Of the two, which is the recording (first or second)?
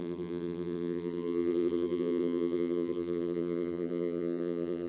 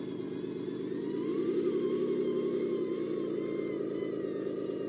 second